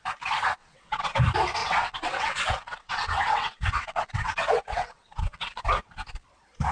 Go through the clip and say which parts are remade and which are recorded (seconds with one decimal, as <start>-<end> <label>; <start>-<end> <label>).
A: 0.0-0.6 recorded; 0.6-1.2 remade; 1.2-1.6 recorded; 1.6-5.6 remade; 5.6-6.7 recorded